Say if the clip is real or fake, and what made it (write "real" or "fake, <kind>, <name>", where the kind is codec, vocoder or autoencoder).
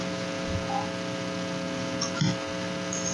real